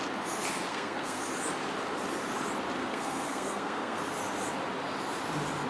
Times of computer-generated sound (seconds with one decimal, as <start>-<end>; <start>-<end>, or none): 0.7-1.2; 2.8-4.0